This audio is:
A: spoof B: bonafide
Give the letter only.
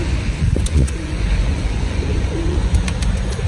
A